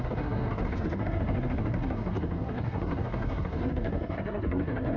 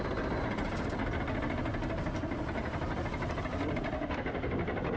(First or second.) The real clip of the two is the second